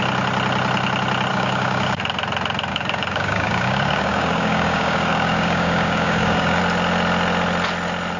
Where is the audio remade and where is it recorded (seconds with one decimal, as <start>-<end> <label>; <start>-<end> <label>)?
0.0-1.3 recorded; 1.3-2.0 remade; 2.0-2.7 recorded; 2.7-6.6 remade; 6.6-8.2 recorded

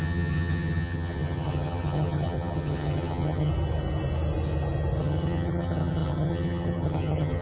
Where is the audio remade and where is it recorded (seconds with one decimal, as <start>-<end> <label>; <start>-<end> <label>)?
0.0-3.5 remade; 3.5-5.0 recorded; 5.0-7.4 remade

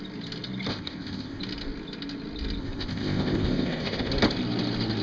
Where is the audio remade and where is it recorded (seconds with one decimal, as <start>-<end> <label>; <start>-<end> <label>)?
0.0-0.7 recorded; 0.7-1.4 remade; 1.4-2.6 recorded; 2.6-4.1 remade; 4.1-5.0 recorded

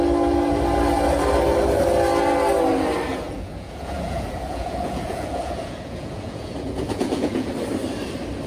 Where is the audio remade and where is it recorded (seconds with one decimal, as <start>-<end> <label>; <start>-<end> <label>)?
0.0-3.1 recorded; 3.1-7.5 remade; 7.5-8.5 recorded

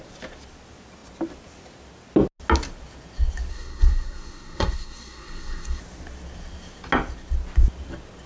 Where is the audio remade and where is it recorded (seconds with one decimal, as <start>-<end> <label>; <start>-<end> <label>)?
0.0-3.5 recorded; 3.5-5.8 remade; 5.8-8.3 recorded

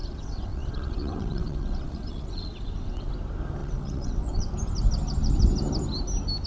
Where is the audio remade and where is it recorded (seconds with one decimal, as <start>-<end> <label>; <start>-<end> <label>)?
0.0-3.1 remade; 3.1-3.6 recorded; 3.6-4.5 remade; 4.5-6.5 recorded

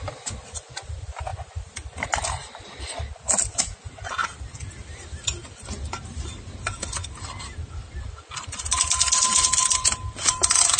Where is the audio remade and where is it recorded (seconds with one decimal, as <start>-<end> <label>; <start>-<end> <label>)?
0.0-10.8 recorded